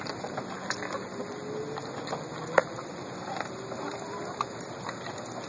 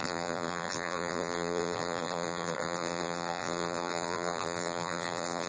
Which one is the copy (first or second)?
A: second